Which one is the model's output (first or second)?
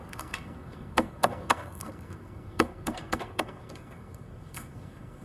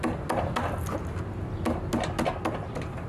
first